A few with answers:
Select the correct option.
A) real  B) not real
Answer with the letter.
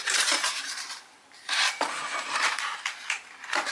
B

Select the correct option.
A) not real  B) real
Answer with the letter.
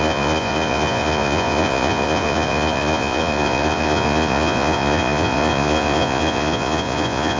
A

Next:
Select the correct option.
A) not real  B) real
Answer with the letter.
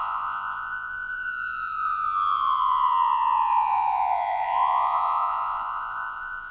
A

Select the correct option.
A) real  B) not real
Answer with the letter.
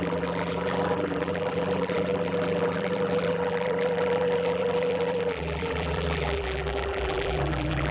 B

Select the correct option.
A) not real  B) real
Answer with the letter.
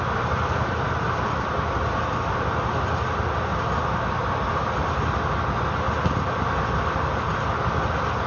B